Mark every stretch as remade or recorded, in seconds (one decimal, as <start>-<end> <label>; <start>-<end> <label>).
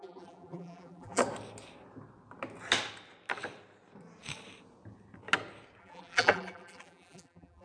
0.0-1.2 remade; 1.2-5.8 recorded; 5.8-7.6 remade